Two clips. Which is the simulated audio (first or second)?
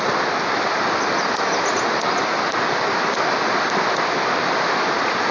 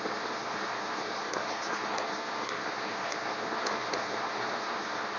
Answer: second